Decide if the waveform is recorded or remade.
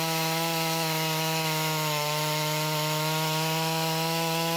remade